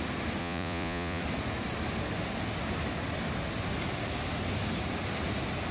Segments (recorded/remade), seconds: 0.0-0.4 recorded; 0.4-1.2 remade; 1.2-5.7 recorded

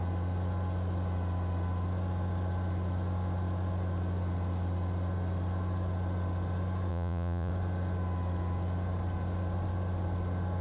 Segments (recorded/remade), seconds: 0.0-6.9 recorded; 6.9-7.5 remade; 7.5-10.6 recorded

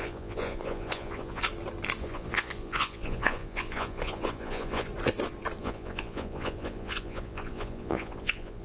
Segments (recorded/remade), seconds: 0.0-1.4 remade; 1.4-2.0 recorded; 2.0-4.9 remade; 4.9-5.6 recorded; 5.6-8.6 remade

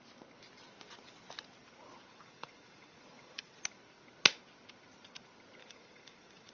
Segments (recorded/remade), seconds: 0.0-2.1 recorded; 2.1-3.6 remade; 3.6-5.6 recorded; 5.6-6.5 remade

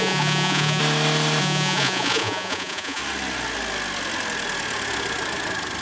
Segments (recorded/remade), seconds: 0.0-0.8 remade; 0.8-1.4 recorded; 1.4-3.0 remade; 3.0-5.8 recorded

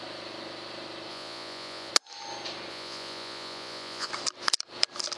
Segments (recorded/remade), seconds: 0.0-1.1 recorded; 1.1-1.9 remade; 1.9-2.7 recorded; 2.7-4.1 remade; 4.1-5.2 recorded